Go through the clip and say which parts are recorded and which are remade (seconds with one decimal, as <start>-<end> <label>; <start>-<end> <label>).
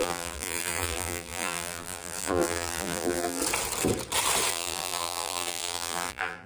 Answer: 0.0-3.4 remade; 3.4-4.5 recorded; 4.5-6.5 remade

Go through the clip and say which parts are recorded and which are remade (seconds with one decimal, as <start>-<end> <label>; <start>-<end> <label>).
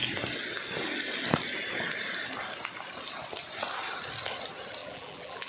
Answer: 0.0-4.8 recorded; 4.8-5.5 remade